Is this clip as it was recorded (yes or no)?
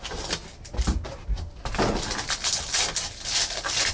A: yes